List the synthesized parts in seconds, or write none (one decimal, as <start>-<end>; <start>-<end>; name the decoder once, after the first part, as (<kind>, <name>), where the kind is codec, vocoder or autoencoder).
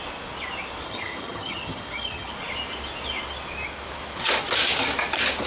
0.8-2.3 (vocoder, HiFi-GAN)